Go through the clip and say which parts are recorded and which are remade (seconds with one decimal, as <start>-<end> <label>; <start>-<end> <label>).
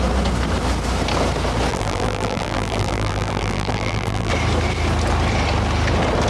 0.0-1.7 recorded; 1.7-4.3 remade; 4.3-6.3 recorded